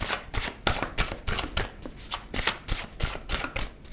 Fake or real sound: real